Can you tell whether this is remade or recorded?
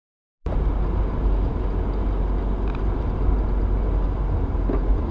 recorded